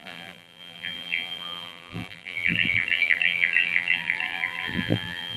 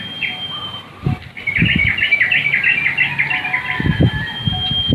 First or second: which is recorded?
second